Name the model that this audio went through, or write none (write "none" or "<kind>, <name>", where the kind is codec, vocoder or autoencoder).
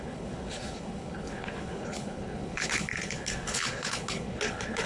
codec, HILCodec